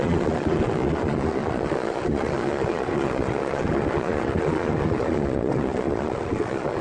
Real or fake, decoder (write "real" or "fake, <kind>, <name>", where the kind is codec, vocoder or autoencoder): fake, vocoder, Vocos